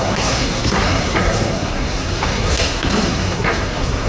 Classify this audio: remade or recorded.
remade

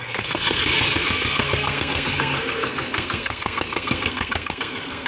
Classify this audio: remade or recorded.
remade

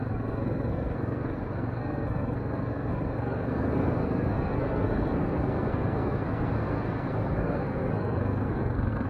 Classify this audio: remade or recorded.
remade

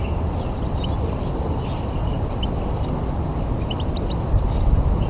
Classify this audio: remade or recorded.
recorded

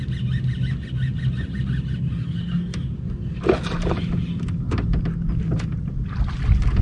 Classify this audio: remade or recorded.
recorded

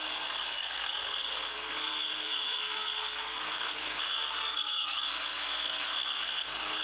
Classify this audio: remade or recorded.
remade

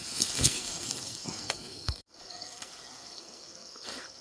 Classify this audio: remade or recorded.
remade